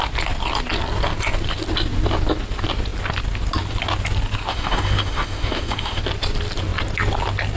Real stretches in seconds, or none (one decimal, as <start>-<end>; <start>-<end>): 0.0-4.5; 6.0-7.6